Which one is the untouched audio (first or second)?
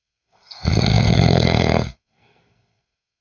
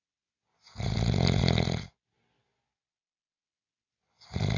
second